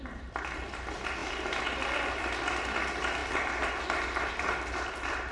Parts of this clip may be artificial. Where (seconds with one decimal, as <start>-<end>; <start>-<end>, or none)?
none